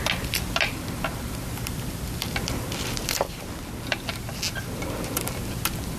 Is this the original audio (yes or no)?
yes